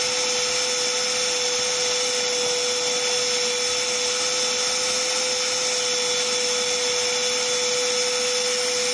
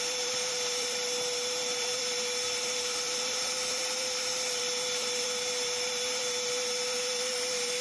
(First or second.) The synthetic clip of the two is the second